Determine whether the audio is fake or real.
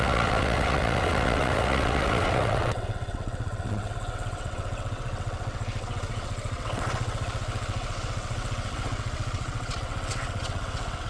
fake